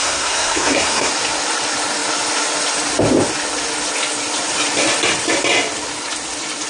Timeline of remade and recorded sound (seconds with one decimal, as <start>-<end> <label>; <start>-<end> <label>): 0.0-1.1 remade; 1.1-6.7 recorded